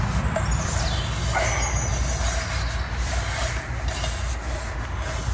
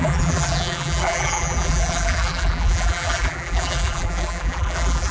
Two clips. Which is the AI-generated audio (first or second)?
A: second